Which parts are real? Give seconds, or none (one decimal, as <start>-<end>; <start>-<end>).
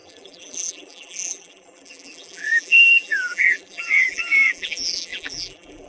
none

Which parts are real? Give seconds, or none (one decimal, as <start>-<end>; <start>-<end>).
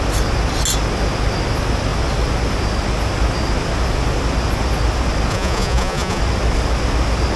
0.0-5.3; 6.2-7.4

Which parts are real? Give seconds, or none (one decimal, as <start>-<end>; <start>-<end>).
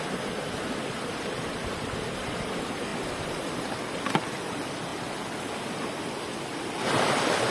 0.0-7.5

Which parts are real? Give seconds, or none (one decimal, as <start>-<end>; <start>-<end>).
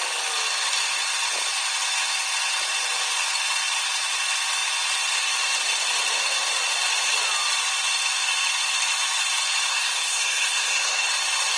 0.0-9.7; 11.1-11.6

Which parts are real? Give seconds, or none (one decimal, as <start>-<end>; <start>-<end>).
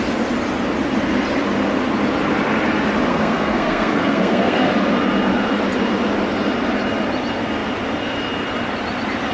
0.0-3.1; 4.7-9.3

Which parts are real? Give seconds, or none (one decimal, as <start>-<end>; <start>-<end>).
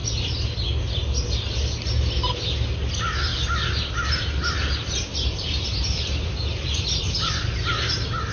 0.0-5.1; 7.3-8.3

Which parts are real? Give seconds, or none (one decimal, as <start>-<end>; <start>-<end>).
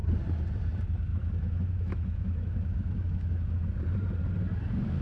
0.0-1.1; 3.7-5.0